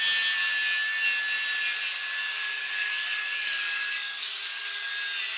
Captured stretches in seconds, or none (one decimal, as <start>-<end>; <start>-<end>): 0.0-2.2; 4.9-5.4